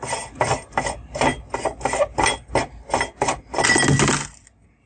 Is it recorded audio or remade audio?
recorded